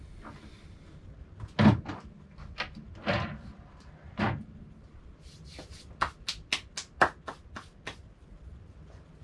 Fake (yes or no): no